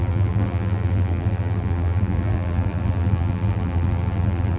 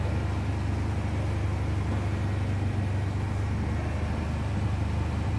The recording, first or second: second